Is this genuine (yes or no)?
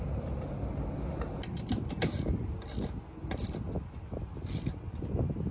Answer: yes